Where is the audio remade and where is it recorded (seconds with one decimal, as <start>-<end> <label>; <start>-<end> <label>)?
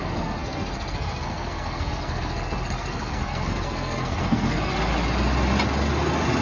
0.0-4.7 remade; 4.7-6.4 recorded